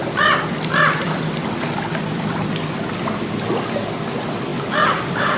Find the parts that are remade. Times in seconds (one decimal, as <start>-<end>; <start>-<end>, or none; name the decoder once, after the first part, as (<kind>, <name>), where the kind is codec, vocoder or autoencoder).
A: none

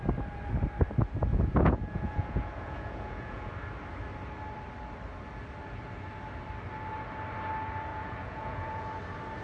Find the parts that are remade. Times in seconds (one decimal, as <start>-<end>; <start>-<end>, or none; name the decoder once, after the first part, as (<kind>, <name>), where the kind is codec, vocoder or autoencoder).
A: 1.3-3.5 (vocoder, Vocos); 7.9-9.0

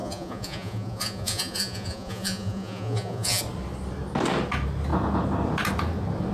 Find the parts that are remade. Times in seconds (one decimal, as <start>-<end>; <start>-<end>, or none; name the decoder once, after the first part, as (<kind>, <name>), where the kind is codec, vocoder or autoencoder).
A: 0.0-3.4 (vocoder, Vocos)

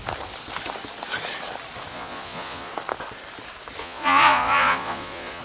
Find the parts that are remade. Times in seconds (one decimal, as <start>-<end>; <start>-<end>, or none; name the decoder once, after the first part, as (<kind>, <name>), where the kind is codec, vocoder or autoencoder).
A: 1.9-2.7 (vocoder, Vocos); 3.8-5.4